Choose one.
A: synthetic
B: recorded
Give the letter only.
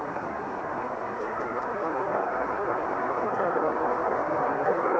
A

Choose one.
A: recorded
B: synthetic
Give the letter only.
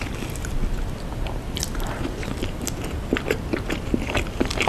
B